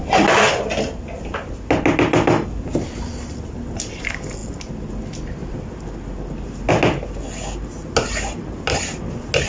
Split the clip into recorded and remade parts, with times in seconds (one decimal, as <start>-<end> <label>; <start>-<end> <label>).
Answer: 0.0-9.5 recorded